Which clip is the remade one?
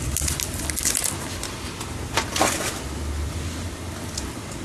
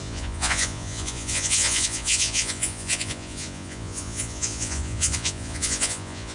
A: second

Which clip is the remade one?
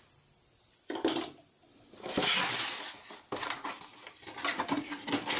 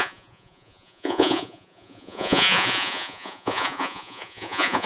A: second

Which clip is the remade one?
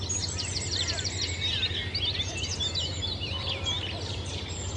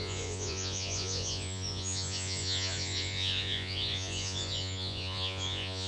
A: second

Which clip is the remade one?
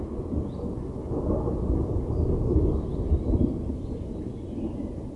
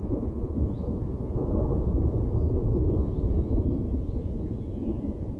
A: second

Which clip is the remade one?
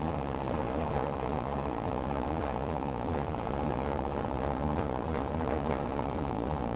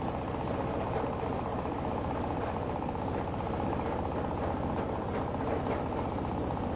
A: first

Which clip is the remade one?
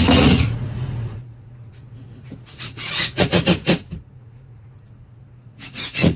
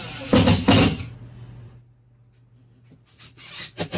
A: first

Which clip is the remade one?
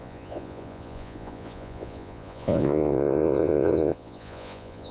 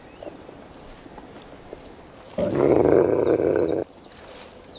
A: first